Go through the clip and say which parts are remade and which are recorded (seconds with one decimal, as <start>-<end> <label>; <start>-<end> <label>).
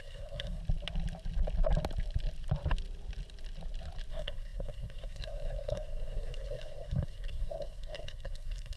0.0-0.6 remade; 0.6-4.1 recorded; 4.1-8.8 remade